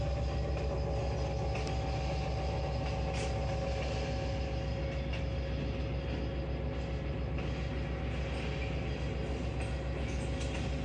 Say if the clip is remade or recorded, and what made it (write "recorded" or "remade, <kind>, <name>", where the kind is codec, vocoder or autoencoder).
recorded